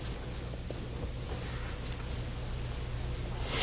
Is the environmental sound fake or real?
real